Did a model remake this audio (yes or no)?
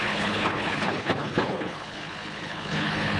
yes